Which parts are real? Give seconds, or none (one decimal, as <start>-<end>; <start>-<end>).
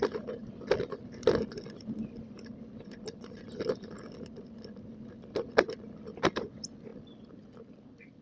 0.0-8.2